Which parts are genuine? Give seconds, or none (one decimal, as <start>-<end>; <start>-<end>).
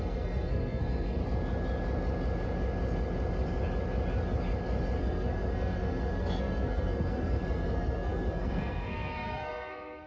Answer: 1.2-5.0